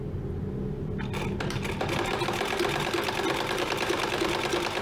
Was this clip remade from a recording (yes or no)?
no